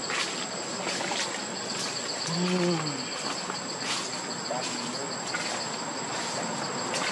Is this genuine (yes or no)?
yes